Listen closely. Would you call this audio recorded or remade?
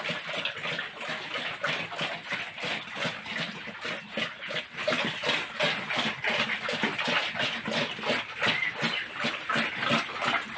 recorded